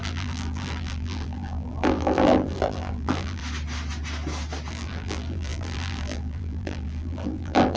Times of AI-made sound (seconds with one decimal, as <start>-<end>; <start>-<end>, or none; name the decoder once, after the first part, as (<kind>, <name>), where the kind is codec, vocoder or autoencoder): 0.0-3.4 (vocoder, BigVGAN v2); 4.7-7.8

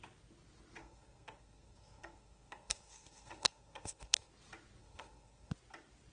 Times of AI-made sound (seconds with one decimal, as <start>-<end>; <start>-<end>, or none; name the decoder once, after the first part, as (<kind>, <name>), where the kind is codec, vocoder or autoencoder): 0.8-4.3 (codec, SNAC); 4.8-5.5